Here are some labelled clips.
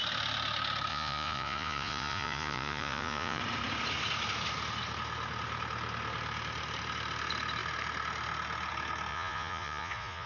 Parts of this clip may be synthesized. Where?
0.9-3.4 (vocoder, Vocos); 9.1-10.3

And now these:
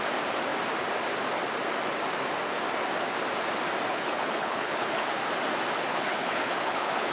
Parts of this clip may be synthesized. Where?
3.9-5.2 (codec, HILCodec); 5.9-7.1

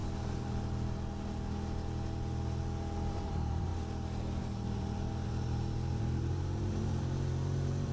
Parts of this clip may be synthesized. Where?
3.1-3.7 (vocoder, BigVGAN v2); 4.4-7.9

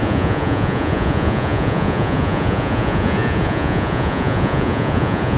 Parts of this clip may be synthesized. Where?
0.0-5.4 (vocoder, Vocos)

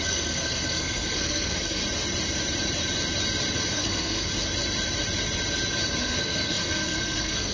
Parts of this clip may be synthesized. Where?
0.0-1.8 (codec, SNAC); 3.7-4.3; 6.0-7.5

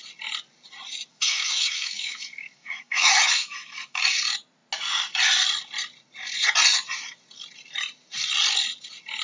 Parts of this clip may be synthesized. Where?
1.1-4.0 (autoencoder, DAC-VAE)

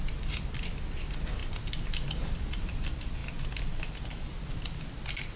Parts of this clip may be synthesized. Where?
none

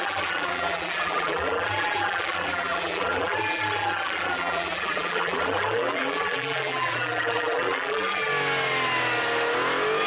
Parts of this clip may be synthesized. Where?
0.0-8.3 (vocoder, BigVGAN v2)